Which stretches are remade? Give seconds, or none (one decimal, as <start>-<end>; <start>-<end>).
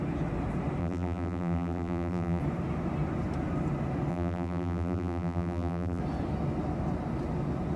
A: 0.8-2.4; 4.1-6.0